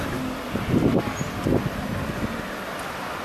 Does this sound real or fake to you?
real